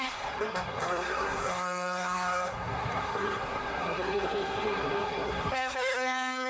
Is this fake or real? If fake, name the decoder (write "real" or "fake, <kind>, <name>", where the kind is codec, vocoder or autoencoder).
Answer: fake, codec, SNAC